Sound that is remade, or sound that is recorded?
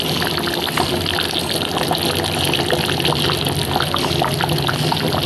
recorded